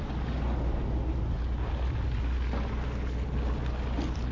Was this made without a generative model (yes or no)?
yes